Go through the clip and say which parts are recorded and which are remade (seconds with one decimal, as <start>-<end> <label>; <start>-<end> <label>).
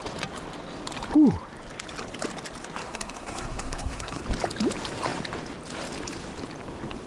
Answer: 0.0-2.8 recorded; 2.8-4.2 remade; 4.2-7.1 recorded